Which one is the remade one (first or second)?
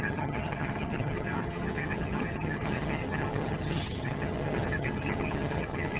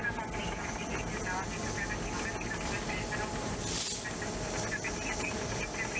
first